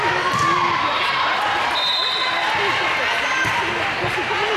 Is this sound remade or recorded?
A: recorded